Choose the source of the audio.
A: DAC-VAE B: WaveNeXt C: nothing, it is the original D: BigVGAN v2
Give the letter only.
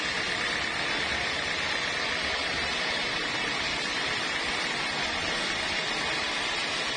C